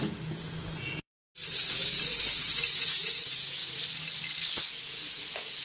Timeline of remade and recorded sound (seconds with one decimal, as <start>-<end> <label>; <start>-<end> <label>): 0.0-1.2 remade; 1.2-2.7 recorded; 2.7-3.6 remade; 3.6-4.7 recorded; 4.7-5.6 remade